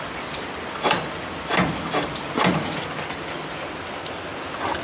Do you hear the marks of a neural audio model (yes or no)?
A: no